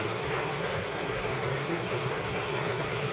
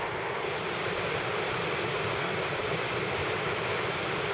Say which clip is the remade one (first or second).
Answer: first